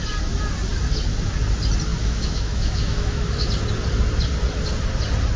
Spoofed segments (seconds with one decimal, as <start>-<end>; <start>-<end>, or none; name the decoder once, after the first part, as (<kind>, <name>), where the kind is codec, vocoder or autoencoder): 1.9-3.5 (autoencoder, DAC-VAE)